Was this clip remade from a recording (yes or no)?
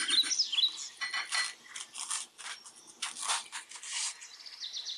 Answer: no